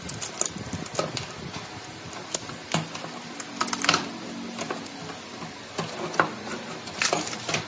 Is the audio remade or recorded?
recorded